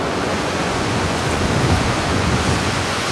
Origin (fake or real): fake